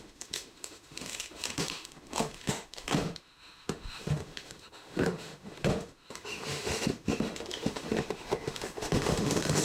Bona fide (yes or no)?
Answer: no